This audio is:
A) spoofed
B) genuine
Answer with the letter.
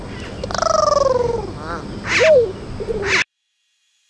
B